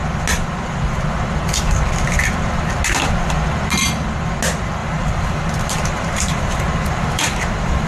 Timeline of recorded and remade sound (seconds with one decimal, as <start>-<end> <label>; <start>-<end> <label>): 0.0-4.8 recorded; 4.8-7.9 remade